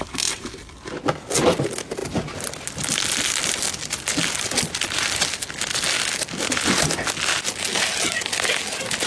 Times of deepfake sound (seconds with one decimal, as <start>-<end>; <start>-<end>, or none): none